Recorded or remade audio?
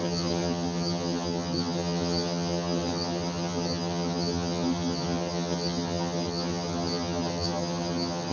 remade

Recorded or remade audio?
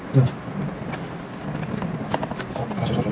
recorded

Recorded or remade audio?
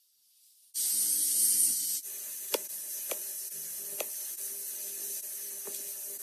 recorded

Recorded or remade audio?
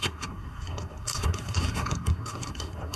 remade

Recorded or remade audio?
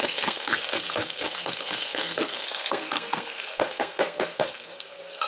remade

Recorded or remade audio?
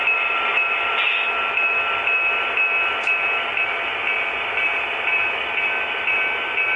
recorded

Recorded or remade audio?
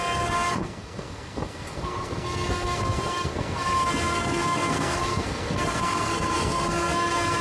remade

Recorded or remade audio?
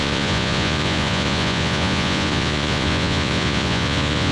remade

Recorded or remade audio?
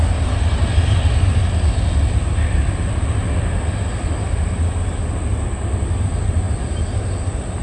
recorded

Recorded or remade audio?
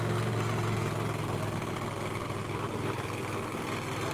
recorded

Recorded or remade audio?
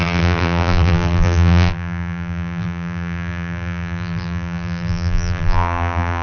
remade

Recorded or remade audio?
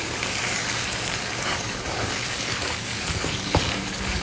remade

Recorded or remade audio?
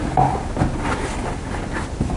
recorded